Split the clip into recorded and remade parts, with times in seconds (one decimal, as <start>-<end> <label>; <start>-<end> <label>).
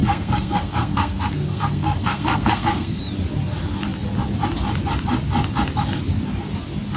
0.0-3.0 remade; 3.0-7.0 recorded